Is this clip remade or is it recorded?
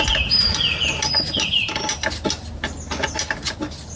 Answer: recorded